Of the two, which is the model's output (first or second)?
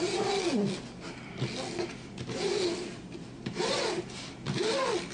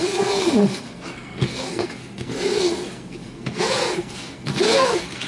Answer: second